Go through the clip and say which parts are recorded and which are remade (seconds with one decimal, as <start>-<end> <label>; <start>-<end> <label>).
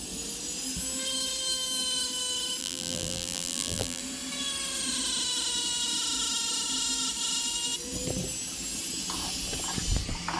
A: 0.0-2.6 recorded; 2.6-4.0 remade; 4.0-10.4 recorded